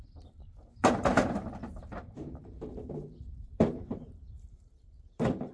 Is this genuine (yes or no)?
no